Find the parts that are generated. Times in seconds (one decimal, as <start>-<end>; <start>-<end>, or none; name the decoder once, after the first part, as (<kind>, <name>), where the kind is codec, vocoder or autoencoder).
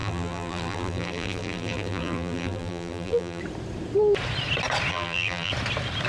0.0-3.4 (vocoder, BigVGAN v2); 4.9-5.5